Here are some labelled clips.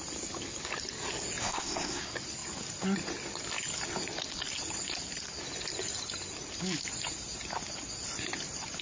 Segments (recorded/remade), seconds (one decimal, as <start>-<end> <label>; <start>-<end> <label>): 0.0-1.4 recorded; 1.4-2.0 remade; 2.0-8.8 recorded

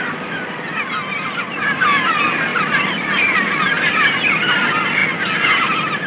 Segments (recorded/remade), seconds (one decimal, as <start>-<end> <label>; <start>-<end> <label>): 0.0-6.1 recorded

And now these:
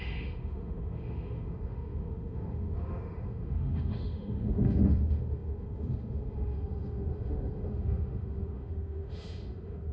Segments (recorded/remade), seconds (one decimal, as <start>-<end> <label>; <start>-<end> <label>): 0.0-9.9 remade